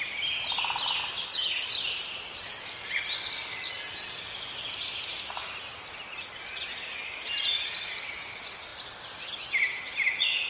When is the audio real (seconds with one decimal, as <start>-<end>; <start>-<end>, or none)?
0.0-1.2; 1.7-10.5